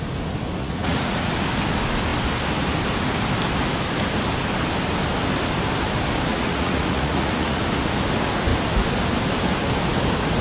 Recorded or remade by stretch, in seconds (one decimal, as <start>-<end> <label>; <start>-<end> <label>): 0.0-0.6 recorded; 0.6-1.3 remade; 1.3-6.3 recorded; 6.3-7.6 remade; 7.6-10.4 recorded